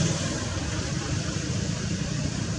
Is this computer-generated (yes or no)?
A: yes